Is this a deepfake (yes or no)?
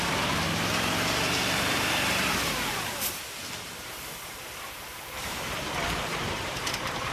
yes